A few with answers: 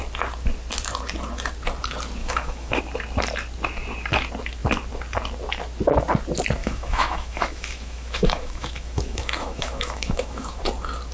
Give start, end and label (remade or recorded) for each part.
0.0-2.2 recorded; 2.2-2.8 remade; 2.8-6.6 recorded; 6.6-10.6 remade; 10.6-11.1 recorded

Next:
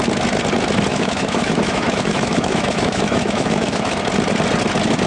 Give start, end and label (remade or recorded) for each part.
0.0-0.9 recorded; 0.9-4.0 remade; 4.0-5.1 recorded

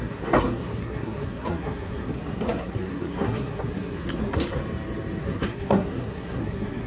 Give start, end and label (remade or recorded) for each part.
0.0-4.6 remade; 4.6-5.2 recorded; 5.2-6.9 remade

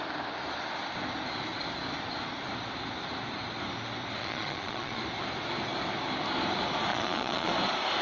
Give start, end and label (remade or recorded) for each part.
0.0-4.2 recorded; 4.2-5.0 remade; 5.0-6.9 recorded; 6.9-7.5 remade; 7.5-8.0 recorded

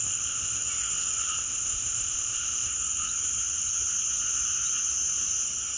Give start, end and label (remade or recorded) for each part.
0.0-0.6 remade; 0.6-1.4 recorded; 1.4-2.7 remade; 2.7-5.8 recorded